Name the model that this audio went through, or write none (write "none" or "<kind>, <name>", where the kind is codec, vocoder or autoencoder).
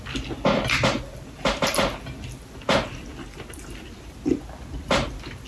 none